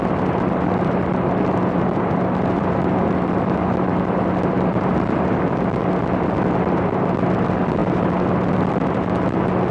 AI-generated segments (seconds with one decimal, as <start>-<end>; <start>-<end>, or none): none